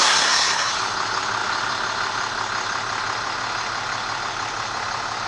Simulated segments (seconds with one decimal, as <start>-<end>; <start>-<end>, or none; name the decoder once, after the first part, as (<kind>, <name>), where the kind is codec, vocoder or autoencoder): 0.0-0.7 (codec, SNAC)